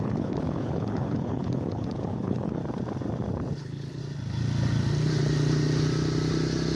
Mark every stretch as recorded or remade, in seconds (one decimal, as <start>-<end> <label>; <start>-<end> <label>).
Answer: 0.0-2.6 remade; 2.6-3.6 recorded; 3.6-4.0 remade; 4.0-6.8 recorded